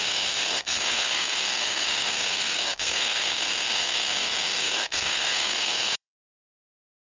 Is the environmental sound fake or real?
fake